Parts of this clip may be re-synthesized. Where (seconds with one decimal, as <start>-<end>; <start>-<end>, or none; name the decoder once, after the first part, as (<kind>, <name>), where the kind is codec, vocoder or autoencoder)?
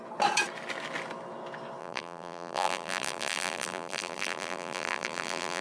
1.8-5.6 (vocoder, BigVGAN v2)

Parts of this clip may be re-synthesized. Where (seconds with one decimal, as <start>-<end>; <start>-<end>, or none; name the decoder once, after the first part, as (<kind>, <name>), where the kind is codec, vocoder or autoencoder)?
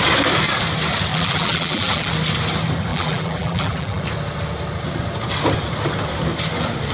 1.1-2.1 (vocoder, BigVGAN v2); 2.9-4.0